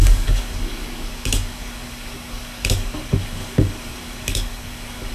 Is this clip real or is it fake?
fake